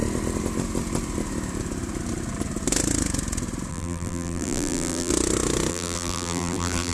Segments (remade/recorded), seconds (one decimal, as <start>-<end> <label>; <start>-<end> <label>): 0.0-3.7 recorded; 3.7-5.1 remade; 5.1-5.7 recorded; 5.7-6.9 remade